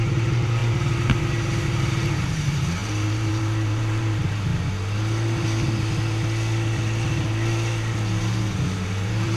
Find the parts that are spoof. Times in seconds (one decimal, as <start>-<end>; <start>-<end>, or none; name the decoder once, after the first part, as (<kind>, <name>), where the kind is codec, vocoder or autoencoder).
0.0-4.5 (vocoder, BigVGAN v2); 8.2-9.4